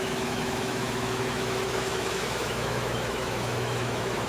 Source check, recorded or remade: remade